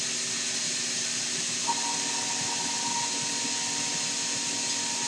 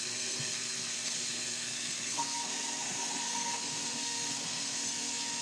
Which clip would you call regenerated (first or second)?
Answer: second